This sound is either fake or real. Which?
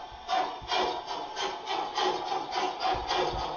real